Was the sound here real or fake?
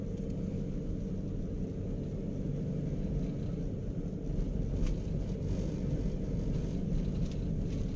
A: real